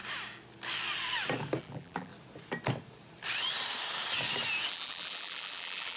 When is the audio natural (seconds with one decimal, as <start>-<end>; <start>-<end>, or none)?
0.0-1.6; 2.1-4.7